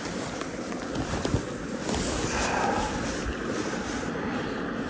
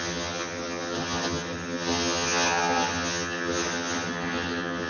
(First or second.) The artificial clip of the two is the second